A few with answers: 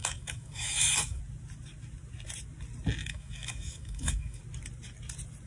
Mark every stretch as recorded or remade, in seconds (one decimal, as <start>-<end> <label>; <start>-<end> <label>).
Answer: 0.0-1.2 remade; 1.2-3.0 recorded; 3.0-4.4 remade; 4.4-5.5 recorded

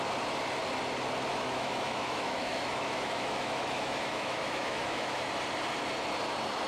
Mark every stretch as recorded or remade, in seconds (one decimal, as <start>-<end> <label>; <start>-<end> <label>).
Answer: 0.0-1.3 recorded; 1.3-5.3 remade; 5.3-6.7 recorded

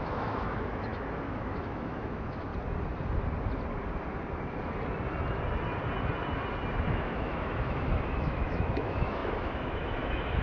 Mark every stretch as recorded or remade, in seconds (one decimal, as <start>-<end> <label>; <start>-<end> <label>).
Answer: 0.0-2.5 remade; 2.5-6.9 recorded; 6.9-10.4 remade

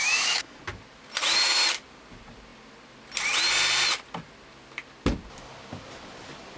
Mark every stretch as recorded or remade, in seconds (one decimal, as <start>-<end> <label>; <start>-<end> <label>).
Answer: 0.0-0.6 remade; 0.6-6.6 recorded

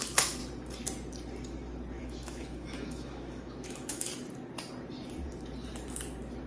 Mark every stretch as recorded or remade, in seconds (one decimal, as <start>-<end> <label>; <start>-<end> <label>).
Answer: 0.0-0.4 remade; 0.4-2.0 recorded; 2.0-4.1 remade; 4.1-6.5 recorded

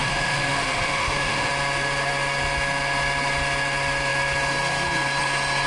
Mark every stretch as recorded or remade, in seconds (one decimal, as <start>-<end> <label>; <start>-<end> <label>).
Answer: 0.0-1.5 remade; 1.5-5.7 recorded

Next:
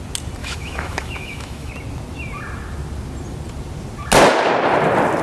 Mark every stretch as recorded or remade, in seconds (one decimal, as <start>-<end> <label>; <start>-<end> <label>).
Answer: 0.0-0.4 recorded; 0.4-1.7 remade; 1.7-5.2 recorded

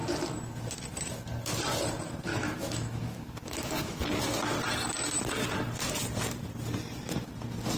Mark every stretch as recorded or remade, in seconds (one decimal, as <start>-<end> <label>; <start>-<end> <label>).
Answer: 0.0-2.3 recorded; 2.3-4.0 remade; 4.0-7.8 recorded